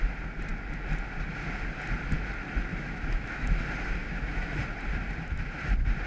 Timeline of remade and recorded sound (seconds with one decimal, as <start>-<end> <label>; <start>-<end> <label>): 0.0-2.7 recorded; 2.7-3.6 remade; 3.6-4.0 recorded; 4.0-4.6 remade; 4.6-6.1 recorded